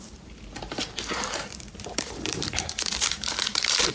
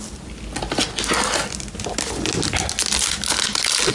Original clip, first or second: second